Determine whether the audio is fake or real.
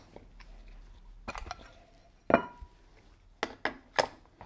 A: real